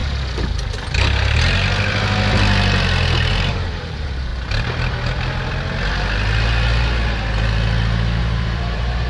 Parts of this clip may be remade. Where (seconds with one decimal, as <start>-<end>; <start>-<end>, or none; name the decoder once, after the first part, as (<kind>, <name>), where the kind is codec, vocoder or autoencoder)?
3.3-4.3 (vocoder, BigVGAN v2); 8.2-9.1